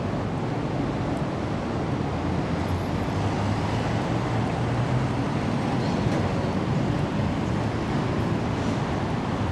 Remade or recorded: recorded